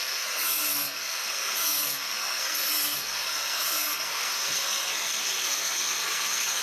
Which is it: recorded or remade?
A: remade